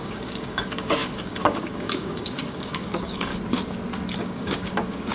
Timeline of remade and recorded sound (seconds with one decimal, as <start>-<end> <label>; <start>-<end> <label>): 0.0-3.3 remade; 3.3-4.2 recorded; 4.2-5.1 remade